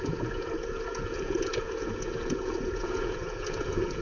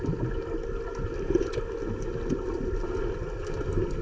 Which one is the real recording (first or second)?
second